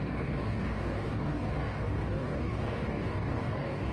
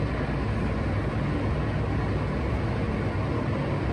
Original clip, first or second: second